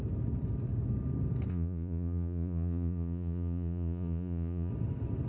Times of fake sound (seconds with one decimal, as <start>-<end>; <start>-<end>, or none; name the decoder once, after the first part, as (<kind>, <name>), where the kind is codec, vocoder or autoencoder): 1.5-4.7 (vocoder, Vocos)